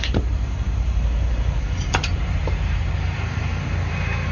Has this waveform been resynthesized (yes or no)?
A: yes